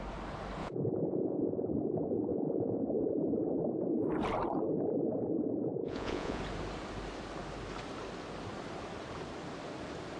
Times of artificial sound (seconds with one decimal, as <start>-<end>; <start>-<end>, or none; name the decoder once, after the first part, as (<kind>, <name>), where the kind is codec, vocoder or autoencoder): 0.6-1.7 (vocoder, Vocos); 2.3-2.8; 5.7-6.4

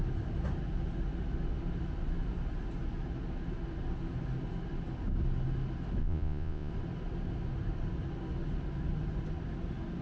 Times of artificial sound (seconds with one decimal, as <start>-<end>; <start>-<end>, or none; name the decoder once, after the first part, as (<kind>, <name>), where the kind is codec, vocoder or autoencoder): 6.0-6.7 (vocoder, Vocos)

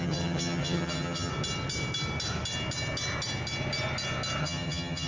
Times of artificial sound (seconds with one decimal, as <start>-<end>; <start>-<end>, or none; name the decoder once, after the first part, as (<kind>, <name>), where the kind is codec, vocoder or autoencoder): 0.0-1.3 (vocoder, HiFi-GAN); 4.4-5.1

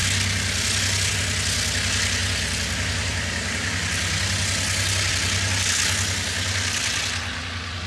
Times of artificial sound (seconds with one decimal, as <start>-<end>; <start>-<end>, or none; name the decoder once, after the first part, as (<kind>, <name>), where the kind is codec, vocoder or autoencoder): none

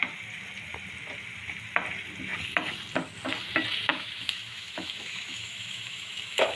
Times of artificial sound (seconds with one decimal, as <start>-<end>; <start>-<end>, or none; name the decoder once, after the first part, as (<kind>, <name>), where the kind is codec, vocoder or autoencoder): 3.9-6.6 (autoencoder, DAC-VAE)